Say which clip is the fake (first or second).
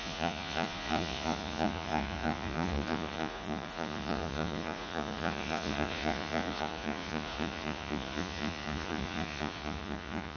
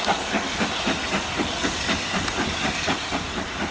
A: first